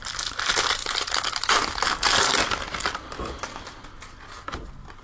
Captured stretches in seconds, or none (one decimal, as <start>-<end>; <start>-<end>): 0.0-0.8; 1.7-5.0